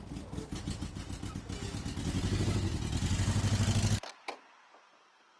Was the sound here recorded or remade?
recorded